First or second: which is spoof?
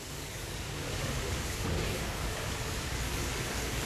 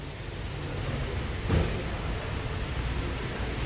first